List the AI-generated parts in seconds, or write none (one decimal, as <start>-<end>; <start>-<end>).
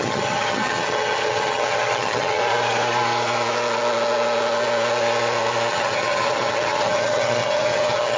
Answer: 0.0-2.4; 5.7-8.2